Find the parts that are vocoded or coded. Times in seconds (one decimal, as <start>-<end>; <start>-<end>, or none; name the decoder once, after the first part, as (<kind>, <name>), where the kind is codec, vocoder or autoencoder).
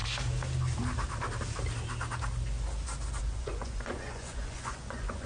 3.2-5.3 (vocoder, Vocos)